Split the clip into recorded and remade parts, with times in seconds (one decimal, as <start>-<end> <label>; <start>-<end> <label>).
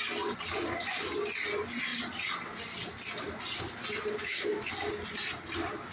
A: 0.0-4.2 recorded; 4.2-4.7 remade; 4.7-5.9 recorded